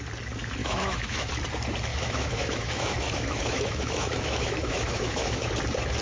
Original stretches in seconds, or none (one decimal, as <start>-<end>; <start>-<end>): 0.0-0.6; 1.3-1.9; 5.5-6.0